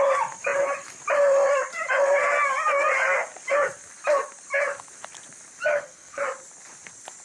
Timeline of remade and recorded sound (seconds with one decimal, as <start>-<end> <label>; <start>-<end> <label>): 0.0-5.7 recorded; 5.7-6.2 remade; 6.2-7.2 recorded